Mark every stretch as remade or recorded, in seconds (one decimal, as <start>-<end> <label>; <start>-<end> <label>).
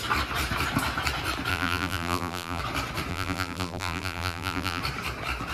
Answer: 0.0-1.5 recorded; 1.5-2.6 remade; 2.6-3.1 recorded; 3.1-4.8 remade; 4.8-5.5 recorded